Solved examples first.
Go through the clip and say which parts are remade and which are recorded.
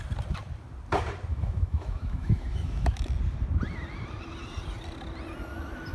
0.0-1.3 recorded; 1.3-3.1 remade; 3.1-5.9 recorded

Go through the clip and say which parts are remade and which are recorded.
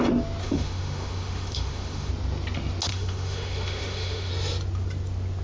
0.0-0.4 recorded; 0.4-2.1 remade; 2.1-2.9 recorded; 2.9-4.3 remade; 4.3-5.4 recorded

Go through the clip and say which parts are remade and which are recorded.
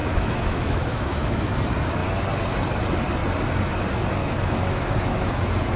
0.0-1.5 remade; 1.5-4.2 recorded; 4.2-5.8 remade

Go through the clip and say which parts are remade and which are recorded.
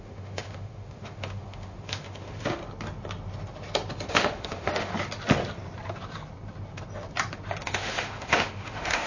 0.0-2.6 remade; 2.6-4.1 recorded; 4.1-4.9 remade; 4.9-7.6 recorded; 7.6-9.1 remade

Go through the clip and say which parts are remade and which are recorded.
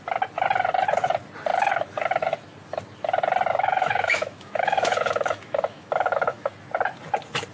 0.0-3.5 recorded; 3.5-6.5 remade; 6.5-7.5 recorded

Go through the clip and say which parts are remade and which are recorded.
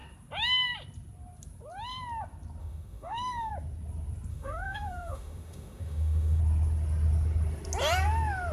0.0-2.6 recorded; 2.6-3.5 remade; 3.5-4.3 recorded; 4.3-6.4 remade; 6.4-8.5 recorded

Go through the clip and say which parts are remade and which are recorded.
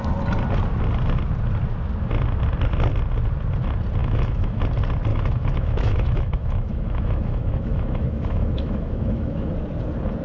0.0-4.0 recorded; 4.0-4.6 remade; 4.6-5.1 recorded; 5.1-9.5 remade; 9.5-10.2 recorded